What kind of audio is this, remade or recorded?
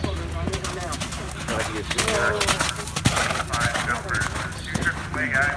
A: recorded